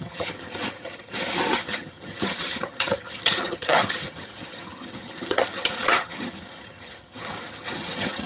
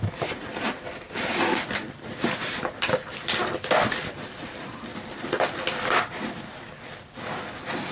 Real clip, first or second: second